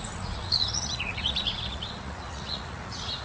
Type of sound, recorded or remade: remade